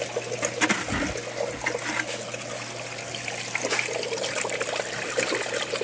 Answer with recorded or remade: recorded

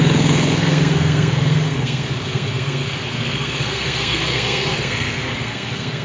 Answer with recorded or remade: remade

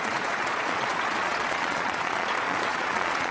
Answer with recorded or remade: remade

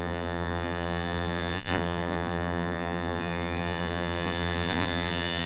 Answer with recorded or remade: remade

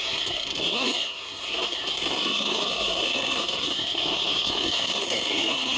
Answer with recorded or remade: remade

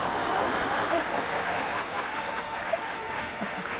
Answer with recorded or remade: remade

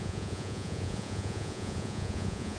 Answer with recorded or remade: remade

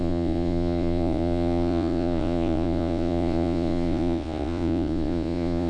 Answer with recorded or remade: remade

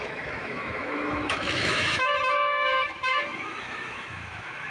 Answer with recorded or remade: remade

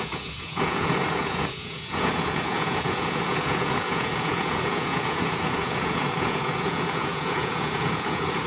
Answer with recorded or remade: remade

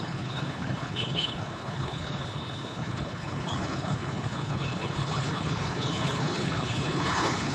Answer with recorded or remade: remade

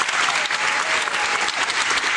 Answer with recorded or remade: recorded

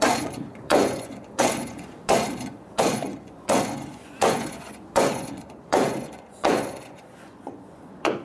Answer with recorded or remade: remade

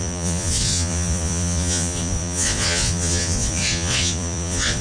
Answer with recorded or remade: remade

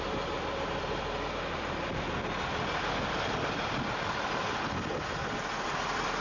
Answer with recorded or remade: recorded